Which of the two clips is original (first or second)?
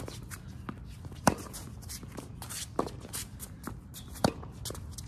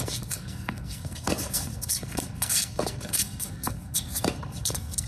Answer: first